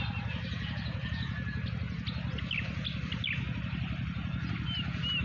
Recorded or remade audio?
recorded